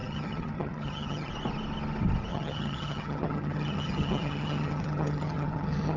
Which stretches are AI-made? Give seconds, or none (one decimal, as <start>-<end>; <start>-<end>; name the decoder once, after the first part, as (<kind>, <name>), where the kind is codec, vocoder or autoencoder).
0.0-1.3 (vocoder, HiFi-GAN); 2.3-6.0